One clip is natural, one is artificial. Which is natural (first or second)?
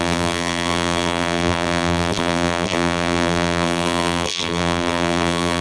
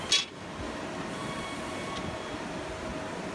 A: second